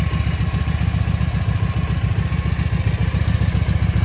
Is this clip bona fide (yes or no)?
yes